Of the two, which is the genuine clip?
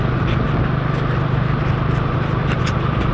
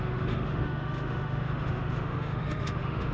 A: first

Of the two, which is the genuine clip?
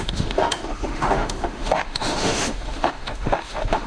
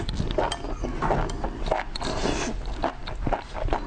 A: second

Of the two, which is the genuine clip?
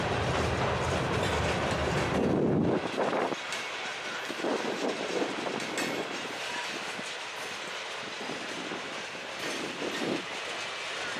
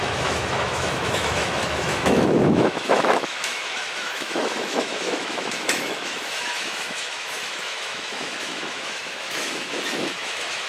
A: first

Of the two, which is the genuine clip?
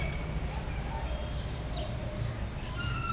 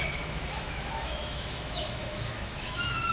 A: first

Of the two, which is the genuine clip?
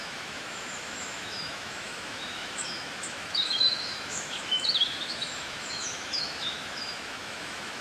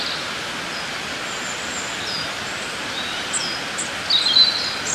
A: second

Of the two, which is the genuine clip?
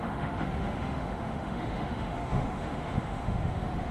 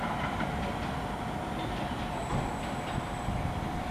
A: second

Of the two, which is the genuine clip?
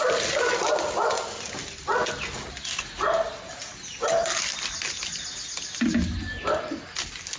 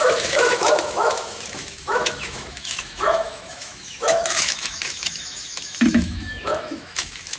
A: first